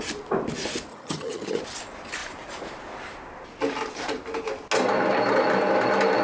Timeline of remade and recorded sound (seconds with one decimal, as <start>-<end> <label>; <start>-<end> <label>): 0.0-0.9 recorded; 0.9-1.6 remade; 1.6-6.2 recorded